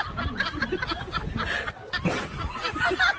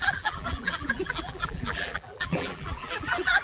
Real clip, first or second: first